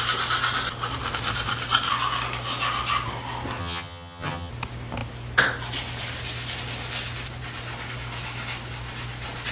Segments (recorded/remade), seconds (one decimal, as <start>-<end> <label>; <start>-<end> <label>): 0.0-3.6 recorded; 3.6-4.5 remade; 4.5-9.5 recorded